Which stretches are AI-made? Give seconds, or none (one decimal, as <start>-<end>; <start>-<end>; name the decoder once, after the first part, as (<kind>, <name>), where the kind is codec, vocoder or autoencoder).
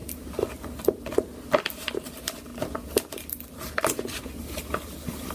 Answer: none